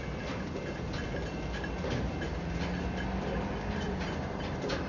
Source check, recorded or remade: recorded